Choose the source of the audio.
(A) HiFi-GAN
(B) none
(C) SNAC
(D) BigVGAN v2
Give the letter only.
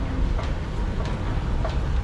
B